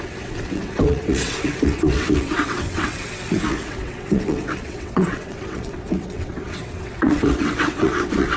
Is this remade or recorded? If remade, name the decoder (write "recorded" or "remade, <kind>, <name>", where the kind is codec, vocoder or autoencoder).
remade, vocoder, WaveNeXt